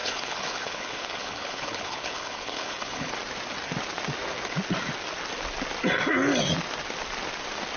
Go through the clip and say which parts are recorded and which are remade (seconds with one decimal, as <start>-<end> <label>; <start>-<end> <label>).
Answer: 0.0-3.1 remade; 3.1-7.8 recorded